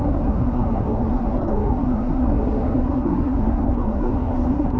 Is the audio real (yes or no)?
no